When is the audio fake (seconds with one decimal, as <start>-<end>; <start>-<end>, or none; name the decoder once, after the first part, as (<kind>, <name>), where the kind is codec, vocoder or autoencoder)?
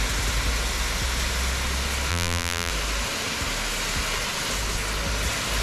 2.1-2.7 (vocoder, BigVGAN v2)